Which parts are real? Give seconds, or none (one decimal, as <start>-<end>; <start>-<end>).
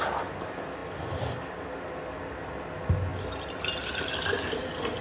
0.0-5.0